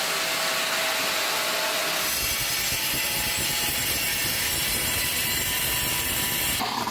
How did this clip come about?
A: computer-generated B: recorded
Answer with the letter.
B